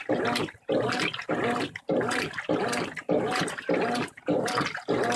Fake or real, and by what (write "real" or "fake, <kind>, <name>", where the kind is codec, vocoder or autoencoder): fake, vocoder, BigVGAN v2